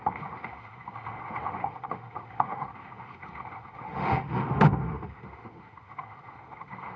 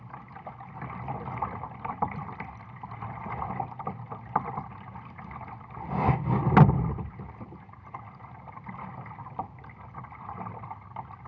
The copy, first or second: first